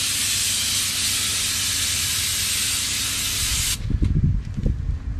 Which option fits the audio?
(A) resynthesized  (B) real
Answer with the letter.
B